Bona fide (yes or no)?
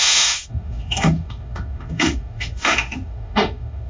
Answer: no